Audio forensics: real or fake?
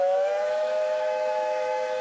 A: fake